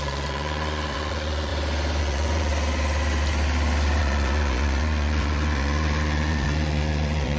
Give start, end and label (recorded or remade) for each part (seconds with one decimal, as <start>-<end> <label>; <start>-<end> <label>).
0.0-1.5 remade; 1.5-2.0 recorded; 2.0-2.5 remade; 2.5-4.0 recorded; 4.0-7.4 remade